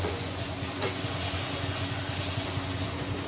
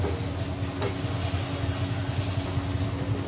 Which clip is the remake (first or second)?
first